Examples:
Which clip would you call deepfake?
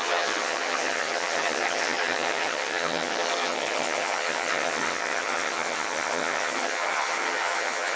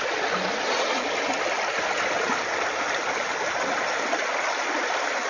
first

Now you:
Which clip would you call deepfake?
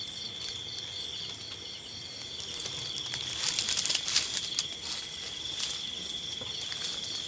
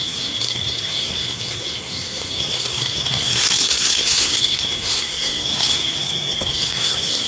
second